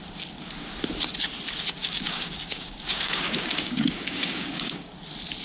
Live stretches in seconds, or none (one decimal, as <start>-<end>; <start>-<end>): 0.0-1.8; 4.9-5.4